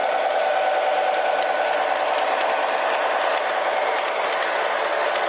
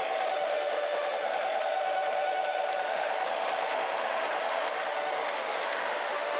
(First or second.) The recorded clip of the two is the first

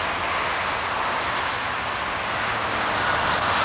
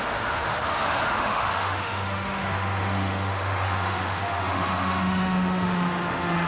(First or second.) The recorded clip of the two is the first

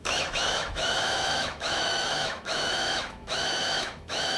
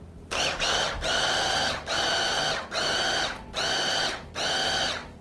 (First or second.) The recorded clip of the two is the second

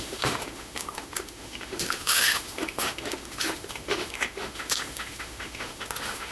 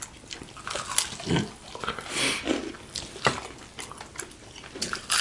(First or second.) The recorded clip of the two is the second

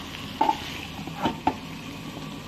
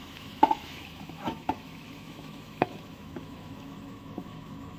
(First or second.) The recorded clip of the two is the first